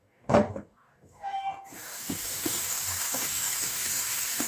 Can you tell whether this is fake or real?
fake